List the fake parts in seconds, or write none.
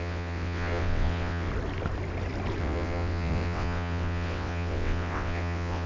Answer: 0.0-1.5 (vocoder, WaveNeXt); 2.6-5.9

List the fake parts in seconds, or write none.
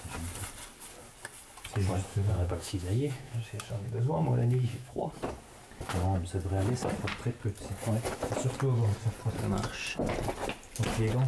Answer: 2.1-5.1 (autoencoder, DAC-VAE)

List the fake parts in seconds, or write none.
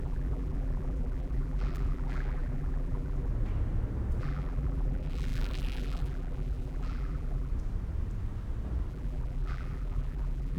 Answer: 0.0-3.3 (vocoder, BigVGAN v2); 4.2-7.5; 8.9-10.6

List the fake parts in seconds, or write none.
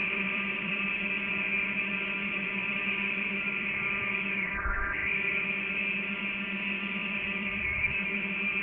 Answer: 0.0-0.8 (vocoder, BigVGAN v2); 2.2-4.6; 7.0-8.6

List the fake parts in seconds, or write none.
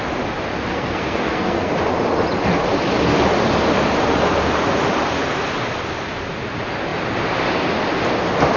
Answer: 0.7-1.7 (codec, SNAC)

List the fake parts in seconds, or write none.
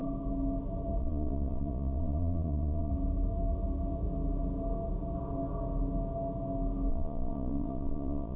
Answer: 1.0-2.9 (vocoder, Vocos); 6.9-8.4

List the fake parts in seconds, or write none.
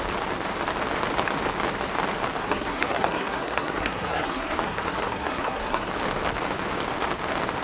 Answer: 2.4-5.9 (codec, SNAC)